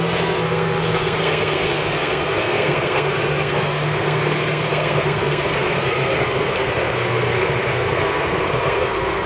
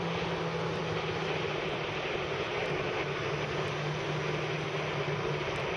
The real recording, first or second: second